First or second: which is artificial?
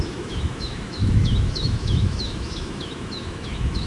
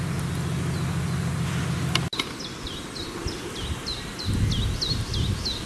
first